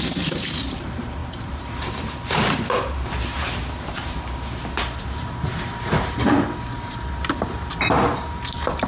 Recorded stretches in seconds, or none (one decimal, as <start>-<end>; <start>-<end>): none